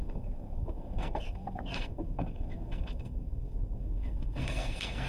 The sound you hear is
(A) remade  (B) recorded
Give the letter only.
A